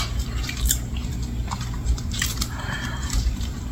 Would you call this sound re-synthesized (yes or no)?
yes